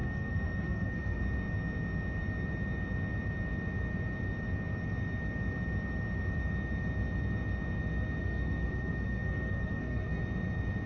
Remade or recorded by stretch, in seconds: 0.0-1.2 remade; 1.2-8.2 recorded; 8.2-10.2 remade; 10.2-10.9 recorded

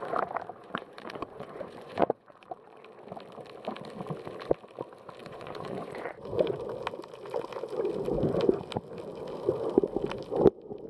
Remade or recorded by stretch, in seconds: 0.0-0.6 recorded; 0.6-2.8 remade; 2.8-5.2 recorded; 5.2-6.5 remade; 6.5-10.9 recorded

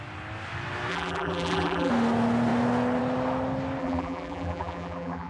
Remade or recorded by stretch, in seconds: 0.0-0.9 recorded; 0.9-1.9 remade; 1.9-3.8 recorded; 3.8-5.3 remade